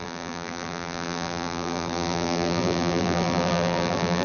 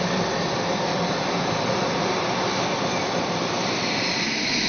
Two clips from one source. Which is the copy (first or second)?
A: first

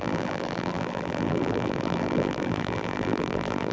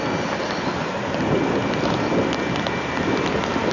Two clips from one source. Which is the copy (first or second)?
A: first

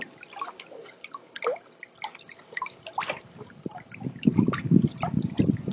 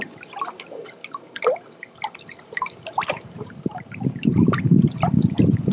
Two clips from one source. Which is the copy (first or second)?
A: second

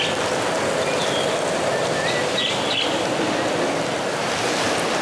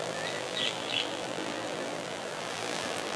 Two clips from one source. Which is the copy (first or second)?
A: second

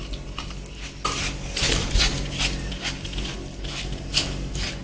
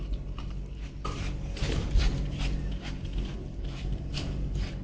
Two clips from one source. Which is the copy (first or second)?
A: second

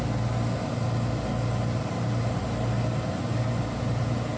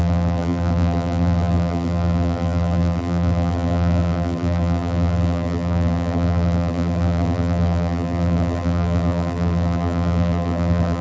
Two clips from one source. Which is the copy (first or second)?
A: second